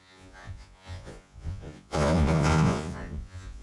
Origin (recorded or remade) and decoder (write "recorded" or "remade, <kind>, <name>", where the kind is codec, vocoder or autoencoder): remade, vocoder, Vocos